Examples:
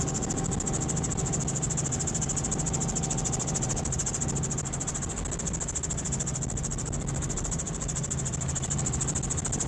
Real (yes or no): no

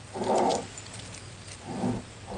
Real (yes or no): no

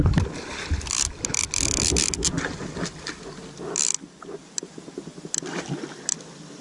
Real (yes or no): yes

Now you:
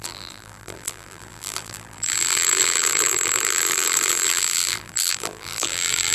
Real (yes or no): no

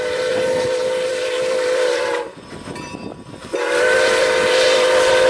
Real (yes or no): no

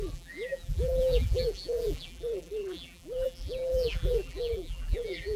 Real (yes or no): no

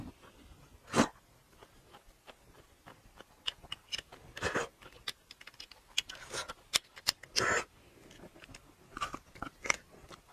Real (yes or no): yes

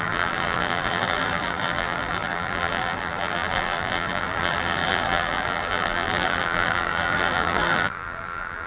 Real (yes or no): no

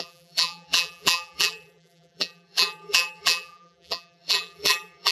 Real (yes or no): no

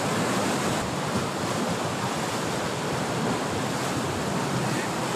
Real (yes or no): yes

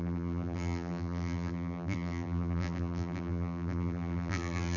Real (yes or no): no